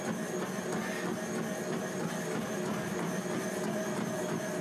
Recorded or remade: recorded